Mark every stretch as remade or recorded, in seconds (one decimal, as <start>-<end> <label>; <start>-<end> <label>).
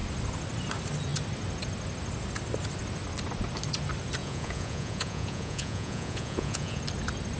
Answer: 0.0-4.2 recorded; 4.2-6.8 remade; 6.8-7.4 recorded